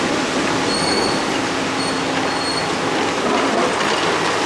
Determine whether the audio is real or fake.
real